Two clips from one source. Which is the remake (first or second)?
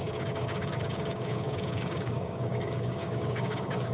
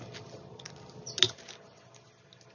first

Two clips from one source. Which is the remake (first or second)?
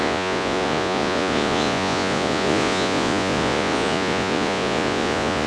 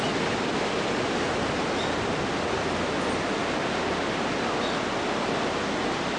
first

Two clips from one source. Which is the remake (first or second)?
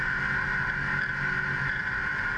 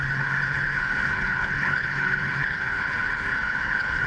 second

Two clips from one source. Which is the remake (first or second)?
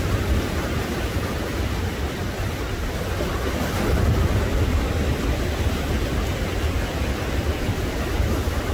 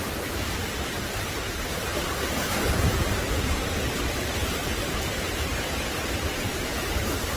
second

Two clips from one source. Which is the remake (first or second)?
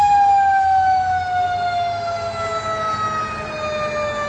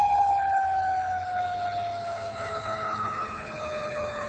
second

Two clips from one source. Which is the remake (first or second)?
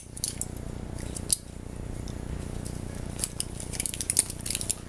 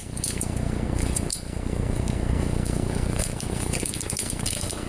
second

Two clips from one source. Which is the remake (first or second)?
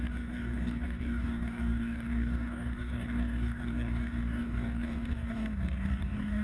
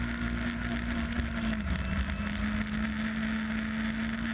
first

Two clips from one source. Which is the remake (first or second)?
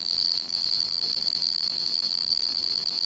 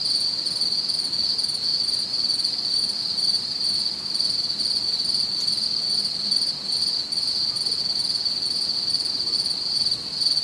first